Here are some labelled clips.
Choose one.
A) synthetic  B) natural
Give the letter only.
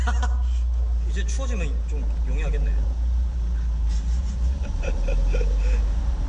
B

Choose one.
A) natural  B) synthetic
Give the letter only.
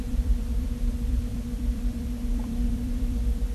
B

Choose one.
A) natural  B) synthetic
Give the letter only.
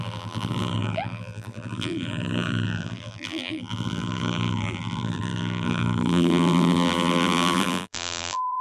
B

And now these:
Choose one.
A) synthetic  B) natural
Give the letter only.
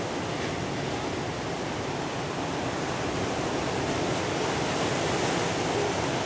B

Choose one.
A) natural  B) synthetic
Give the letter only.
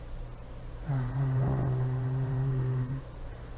B